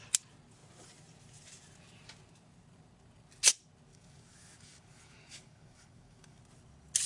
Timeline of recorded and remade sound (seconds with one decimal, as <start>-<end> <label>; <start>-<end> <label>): 0.0-3.9 recorded; 3.9-6.4 remade; 6.4-7.1 recorded